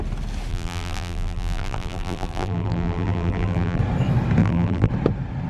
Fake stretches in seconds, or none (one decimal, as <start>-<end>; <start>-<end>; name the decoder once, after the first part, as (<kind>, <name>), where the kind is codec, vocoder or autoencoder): 0.5-3.8 (vocoder, BigVGAN v2); 4.4-4.9